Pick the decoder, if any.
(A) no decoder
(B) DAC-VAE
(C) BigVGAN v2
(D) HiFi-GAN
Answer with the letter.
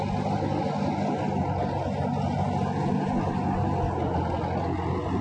A